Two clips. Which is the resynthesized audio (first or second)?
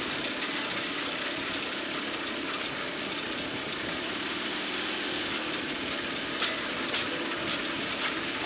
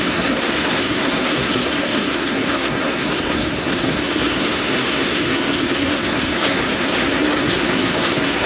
second